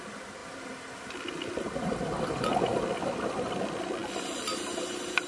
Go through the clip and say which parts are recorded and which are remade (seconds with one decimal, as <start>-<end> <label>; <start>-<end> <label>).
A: 0.0-5.3 recorded